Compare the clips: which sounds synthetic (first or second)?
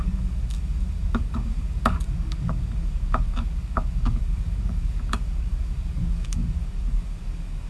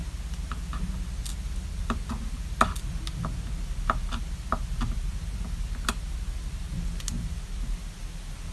first